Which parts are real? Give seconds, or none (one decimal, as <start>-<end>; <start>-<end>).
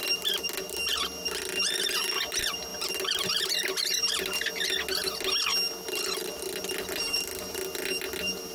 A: 0.0-8.5